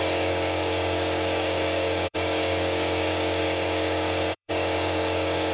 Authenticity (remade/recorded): remade